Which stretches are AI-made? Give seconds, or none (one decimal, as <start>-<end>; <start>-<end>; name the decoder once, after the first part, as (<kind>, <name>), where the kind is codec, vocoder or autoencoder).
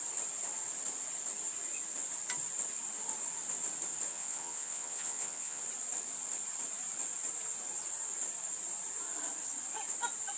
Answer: 4.1-5.6 (vocoder, WaveNeXt)